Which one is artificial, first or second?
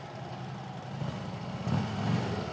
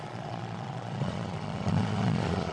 second